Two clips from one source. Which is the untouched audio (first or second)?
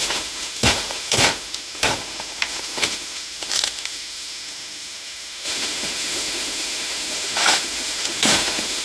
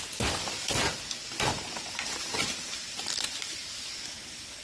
second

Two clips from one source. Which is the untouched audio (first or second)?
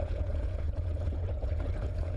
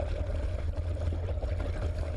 second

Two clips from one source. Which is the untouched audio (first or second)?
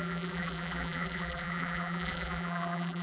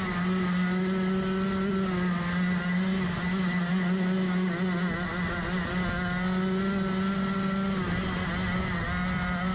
second